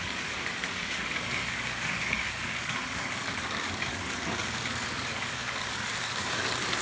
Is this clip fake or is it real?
fake